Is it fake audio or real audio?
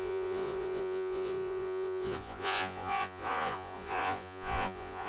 fake